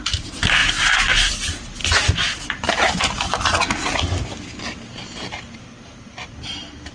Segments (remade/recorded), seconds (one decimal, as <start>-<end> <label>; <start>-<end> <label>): 0.0-6.9 recorded